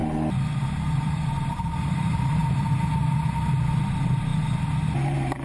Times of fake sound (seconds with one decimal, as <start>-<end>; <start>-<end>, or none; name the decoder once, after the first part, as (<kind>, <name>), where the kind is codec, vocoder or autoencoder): 0.6-2.4 (vocoder, BigVGAN v2); 3.8-4.3; 4.9-5.4